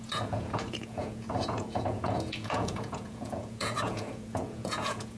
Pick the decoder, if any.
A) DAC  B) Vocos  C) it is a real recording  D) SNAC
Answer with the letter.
B